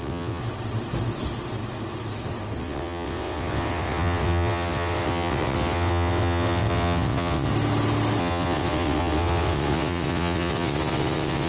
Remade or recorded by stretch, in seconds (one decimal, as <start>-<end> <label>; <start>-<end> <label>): 0.0-0.4 remade; 0.4-2.6 recorded; 2.6-7.5 remade; 7.5-8.2 recorded; 8.2-11.5 remade